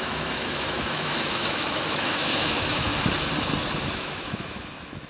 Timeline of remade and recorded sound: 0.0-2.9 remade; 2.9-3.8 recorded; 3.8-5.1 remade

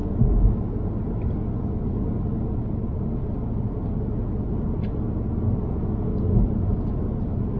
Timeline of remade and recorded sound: 0.0-7.6 recorded

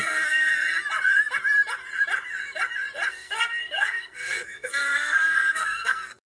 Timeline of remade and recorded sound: 0.0-0.5 remade; 0.5-3.1 recorded; 3.1-6.3 remade

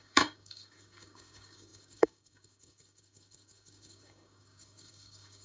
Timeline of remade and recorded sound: 0.0-5.4 remade

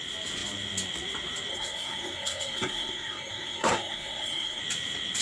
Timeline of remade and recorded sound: 0.0-1.5 recorded; 1.5-4.6 remade; 4.6-5.2 recorded

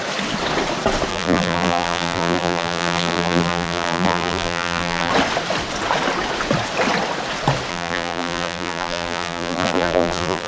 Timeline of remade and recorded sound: 0.0-1.1 recorded; 1.1-5.1 remade; 5.1-7.7 recorded; 7.7-10.5 remade

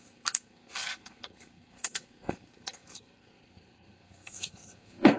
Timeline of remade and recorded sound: 0.0-5.2 remade